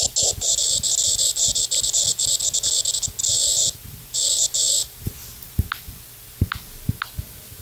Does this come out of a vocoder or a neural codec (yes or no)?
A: no